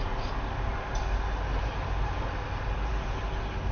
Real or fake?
real